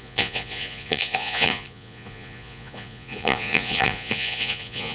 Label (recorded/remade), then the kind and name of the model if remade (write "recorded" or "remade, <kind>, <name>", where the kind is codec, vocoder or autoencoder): remade, vocoder, Vocos